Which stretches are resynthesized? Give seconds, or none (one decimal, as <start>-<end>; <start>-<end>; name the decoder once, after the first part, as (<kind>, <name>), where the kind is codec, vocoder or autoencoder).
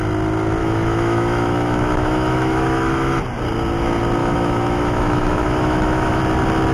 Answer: 0.6-3.2 (autoencoder, DAC-VAE); 4.2-6.2